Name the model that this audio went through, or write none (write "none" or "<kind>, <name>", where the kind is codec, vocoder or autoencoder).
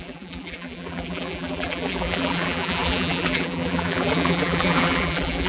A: vocoder, BigVGAN v2